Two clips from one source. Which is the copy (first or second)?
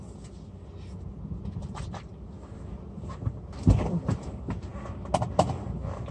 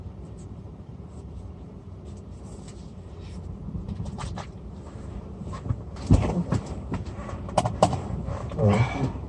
second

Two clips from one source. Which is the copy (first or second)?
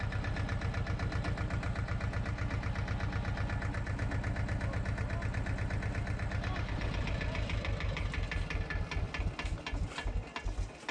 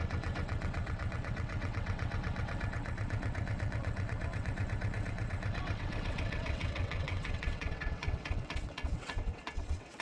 second